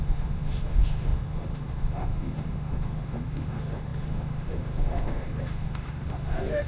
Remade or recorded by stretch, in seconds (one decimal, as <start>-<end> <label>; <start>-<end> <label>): 0.0-6.7 remade